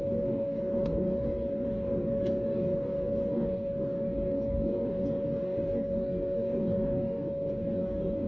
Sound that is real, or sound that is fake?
fake